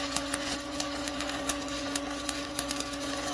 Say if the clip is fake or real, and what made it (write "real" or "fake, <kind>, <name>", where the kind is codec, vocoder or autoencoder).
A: fake, vocoder, Vocos